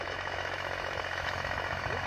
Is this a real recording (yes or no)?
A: no